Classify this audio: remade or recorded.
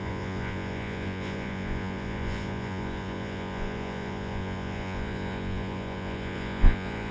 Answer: remade